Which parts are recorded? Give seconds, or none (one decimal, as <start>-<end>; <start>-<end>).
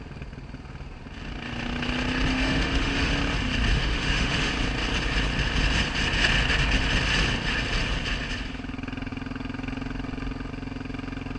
0.0-2.3; 3.1-3.7; 4.5-11.4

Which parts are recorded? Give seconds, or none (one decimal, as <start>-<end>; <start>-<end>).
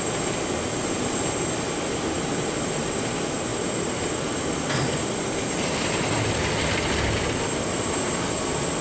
0.0-8.8